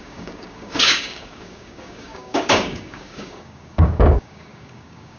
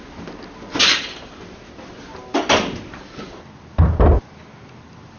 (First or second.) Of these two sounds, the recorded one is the second